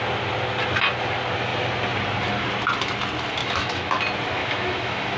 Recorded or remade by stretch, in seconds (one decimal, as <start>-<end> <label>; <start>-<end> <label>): 0.0-3.4 recorded; 3.4-4.0 remade; 4.0-4.4 recorded; 4.4-5.2 remade